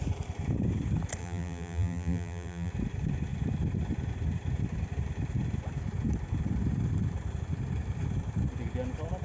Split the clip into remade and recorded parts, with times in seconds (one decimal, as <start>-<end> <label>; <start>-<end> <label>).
0.0-1.2 recorded; 1.2-2.7 remade; 2.7-9.2 recorded